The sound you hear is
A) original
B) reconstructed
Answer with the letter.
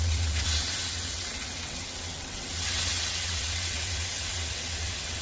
B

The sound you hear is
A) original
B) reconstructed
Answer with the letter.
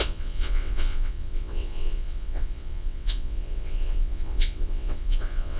B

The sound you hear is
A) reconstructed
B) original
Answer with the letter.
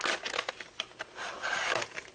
B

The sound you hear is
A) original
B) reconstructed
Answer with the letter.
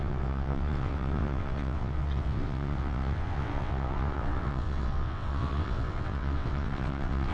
B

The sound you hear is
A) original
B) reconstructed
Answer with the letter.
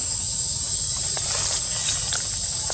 A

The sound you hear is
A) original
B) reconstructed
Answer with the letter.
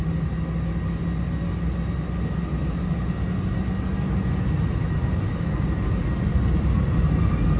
A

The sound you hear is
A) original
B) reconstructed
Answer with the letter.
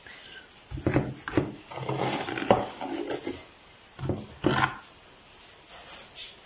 A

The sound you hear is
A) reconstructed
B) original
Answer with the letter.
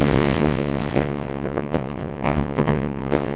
A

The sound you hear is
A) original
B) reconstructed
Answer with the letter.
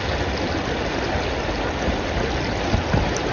A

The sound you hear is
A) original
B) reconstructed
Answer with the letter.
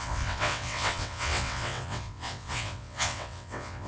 B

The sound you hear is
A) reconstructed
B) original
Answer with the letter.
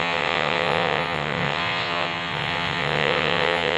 A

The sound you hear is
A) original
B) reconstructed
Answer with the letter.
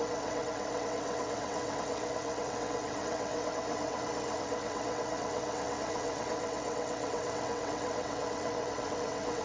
B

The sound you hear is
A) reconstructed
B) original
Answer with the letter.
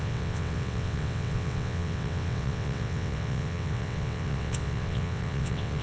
A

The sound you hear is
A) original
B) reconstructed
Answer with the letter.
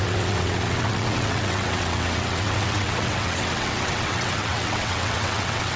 B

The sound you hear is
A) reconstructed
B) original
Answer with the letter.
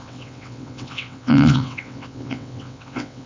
A